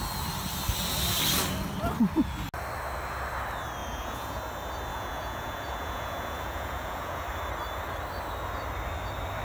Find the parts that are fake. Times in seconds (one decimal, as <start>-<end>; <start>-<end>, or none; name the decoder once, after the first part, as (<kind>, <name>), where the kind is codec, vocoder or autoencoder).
3.8-4.4 (vocoder, Vocos); 4.9-7.2